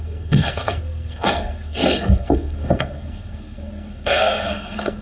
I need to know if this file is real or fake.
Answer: fake